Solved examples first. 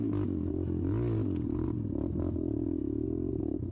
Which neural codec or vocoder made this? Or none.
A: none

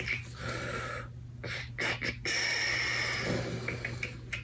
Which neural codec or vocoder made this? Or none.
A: none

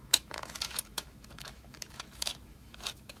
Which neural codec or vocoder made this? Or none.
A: autoencoder, DAC-VAE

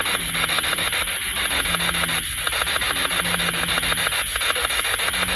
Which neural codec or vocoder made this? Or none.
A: none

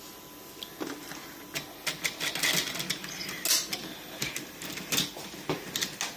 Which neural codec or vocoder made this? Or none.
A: none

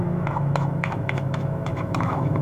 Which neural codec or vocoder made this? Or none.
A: autoencoder, DAC-VAE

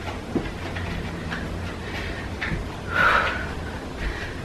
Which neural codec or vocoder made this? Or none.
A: none